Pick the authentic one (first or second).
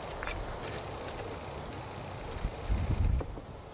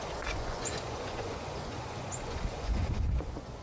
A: first